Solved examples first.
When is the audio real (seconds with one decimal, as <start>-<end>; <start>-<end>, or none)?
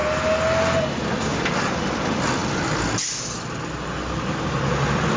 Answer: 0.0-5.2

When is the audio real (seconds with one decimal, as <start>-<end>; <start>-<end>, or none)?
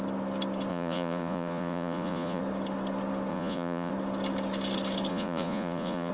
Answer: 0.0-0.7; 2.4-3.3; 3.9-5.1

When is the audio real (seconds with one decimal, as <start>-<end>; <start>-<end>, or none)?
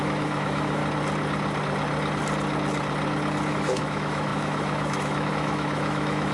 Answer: 0.8-3.5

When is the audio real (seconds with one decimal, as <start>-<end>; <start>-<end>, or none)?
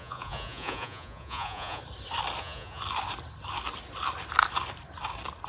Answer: 1.8-2.4; 2.8-5.5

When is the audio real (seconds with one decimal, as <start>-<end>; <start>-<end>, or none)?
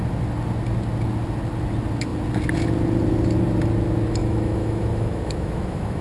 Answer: 0.0-4.2